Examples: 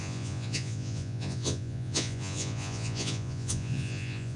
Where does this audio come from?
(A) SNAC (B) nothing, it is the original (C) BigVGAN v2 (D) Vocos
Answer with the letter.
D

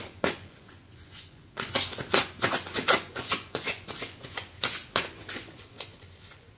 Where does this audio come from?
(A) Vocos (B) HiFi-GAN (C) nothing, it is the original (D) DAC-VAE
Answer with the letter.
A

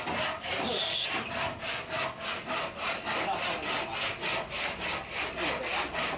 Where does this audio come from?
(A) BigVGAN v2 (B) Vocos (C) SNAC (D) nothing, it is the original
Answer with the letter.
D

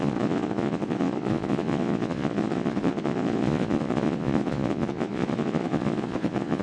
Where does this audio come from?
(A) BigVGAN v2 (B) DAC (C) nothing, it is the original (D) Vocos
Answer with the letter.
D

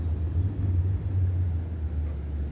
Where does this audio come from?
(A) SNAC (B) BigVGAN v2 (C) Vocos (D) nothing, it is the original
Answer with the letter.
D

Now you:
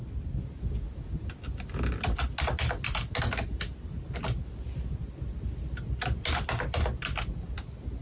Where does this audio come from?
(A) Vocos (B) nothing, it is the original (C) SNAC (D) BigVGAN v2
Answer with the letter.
B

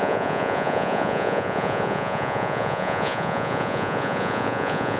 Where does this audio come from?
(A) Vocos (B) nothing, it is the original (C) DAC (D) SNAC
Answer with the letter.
A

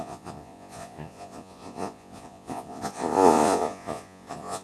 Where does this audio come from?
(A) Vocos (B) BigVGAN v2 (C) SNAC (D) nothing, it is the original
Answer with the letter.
A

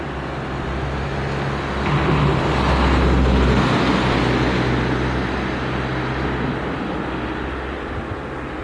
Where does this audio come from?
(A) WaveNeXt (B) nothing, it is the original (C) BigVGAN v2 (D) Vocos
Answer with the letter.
B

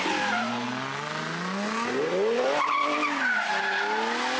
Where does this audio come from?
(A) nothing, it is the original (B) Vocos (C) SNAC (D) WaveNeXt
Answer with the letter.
A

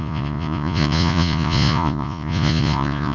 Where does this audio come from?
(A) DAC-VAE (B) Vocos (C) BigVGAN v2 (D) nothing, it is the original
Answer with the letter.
B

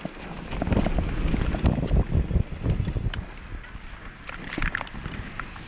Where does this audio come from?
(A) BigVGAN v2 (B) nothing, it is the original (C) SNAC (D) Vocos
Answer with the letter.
B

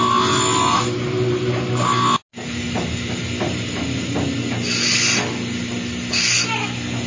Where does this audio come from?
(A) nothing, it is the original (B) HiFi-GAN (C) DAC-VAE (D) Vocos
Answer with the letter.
A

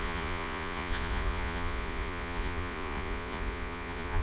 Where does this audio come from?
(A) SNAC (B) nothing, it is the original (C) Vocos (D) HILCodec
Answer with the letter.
C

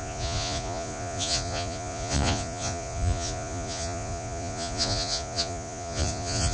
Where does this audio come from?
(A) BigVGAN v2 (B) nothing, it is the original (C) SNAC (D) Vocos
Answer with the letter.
D